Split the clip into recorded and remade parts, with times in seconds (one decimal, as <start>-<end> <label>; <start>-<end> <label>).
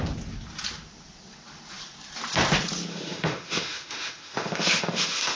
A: 0.0-2.9 recorded; 2.9-5.4 remade